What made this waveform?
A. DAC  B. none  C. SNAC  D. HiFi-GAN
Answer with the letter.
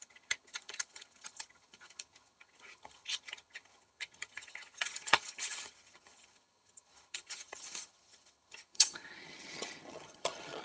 D